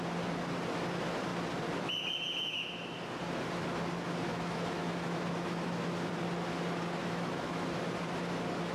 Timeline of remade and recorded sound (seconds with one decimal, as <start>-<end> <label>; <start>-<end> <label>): 0.0-4.3 recorded; 4.3-6.1 remade; 6.1-7.0 recorded; 7.0-7.8 remade; 7.8-8.7 recorded